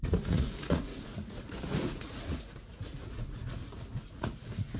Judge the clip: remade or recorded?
remade